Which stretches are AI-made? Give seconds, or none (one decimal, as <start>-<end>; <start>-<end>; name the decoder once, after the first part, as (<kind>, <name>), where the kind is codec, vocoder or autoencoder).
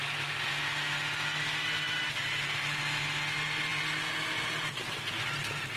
none